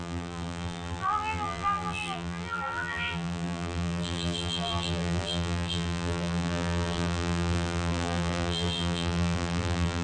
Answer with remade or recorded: remade